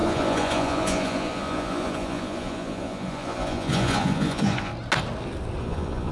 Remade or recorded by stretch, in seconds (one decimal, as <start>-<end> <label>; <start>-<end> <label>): 0.0-4.7 remade; 4.7-5.6 recorded; 5.6-6.1 remade